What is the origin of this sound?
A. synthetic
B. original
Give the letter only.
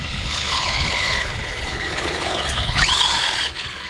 A